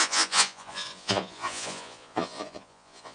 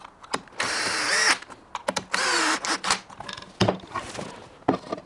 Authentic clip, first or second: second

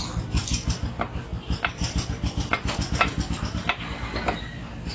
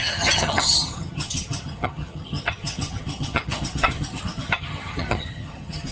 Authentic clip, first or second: first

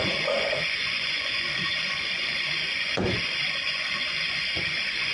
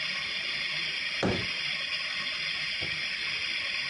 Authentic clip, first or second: second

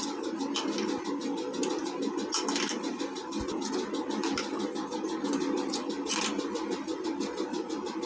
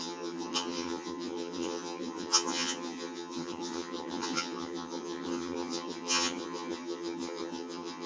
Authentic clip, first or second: first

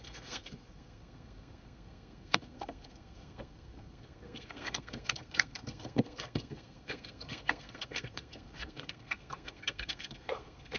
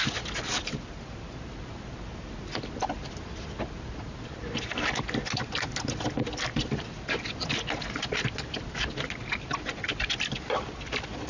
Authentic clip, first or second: second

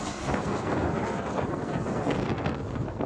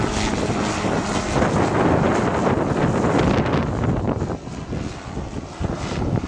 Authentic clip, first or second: second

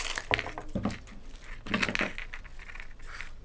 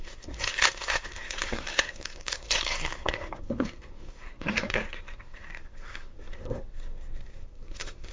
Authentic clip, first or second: first